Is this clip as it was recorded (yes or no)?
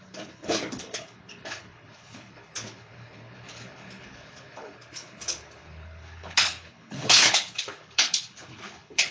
no